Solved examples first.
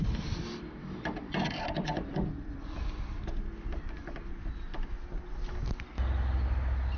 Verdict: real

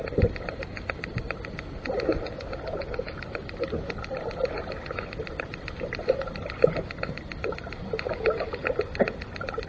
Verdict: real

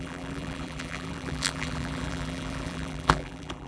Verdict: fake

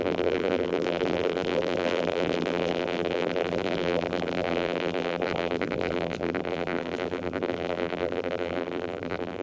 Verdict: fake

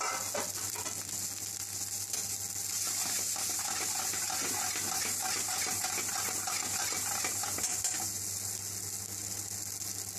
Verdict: real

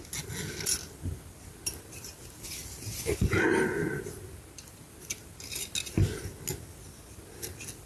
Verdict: real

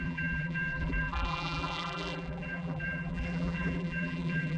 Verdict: fake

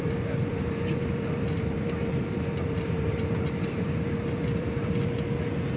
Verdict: fake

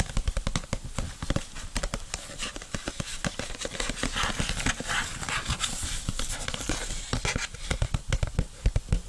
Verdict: real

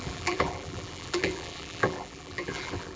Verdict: fake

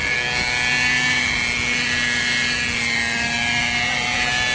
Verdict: real